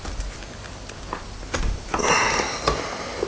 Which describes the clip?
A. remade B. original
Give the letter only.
B